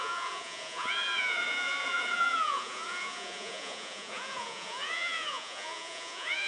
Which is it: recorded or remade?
remade